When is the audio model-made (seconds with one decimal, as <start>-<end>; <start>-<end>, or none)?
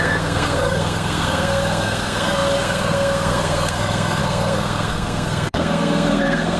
0.0-6.6